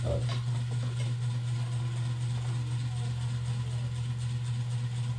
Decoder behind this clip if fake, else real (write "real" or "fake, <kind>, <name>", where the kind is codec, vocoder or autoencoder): real